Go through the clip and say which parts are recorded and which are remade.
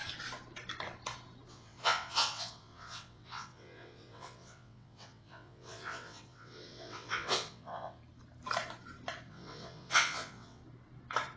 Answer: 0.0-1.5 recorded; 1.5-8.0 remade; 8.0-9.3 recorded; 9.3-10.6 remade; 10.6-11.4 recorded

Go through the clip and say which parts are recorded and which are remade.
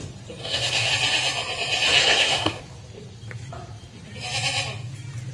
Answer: 0.0-0.4 recorded; 0.4-0.9 remade; 0.9-2.0 recorded; 2.0-2.6 remade; 2.6-5.3 recorded